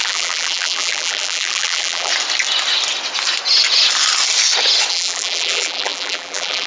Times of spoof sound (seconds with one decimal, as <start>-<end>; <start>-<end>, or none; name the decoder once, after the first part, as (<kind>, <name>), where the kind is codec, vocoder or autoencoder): 0.0-2.1 (vocoder, BigVGAN v2); 4.9-6.7